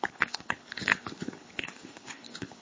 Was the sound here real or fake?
fake